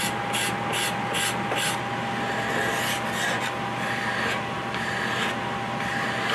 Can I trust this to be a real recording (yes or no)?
yes